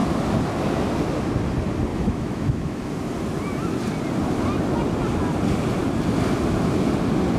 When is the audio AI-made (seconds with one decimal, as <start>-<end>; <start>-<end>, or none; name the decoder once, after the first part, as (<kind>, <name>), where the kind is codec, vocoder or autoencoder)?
1.9-2.9 (autoencoder, DAC-VAE)